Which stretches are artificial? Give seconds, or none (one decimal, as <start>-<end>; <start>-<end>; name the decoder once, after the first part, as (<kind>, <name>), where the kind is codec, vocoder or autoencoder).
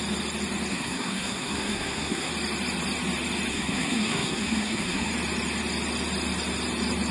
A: 0.7-2.3 (codec, SNAC); 3.5-5.1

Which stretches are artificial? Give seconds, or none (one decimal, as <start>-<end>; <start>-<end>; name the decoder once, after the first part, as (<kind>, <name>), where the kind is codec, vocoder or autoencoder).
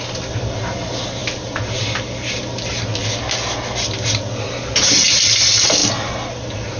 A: none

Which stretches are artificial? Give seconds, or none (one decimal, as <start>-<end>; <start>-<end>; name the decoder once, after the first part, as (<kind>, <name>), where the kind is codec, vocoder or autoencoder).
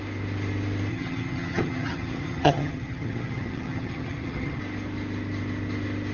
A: 0.9-4.6 (vocoder, HiFi-GAN)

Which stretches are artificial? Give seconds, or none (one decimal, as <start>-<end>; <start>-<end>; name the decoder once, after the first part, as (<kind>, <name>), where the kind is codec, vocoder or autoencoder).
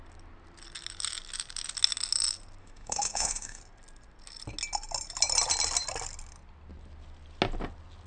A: 2.6-3.6 (autoencoder, DAC-VAE)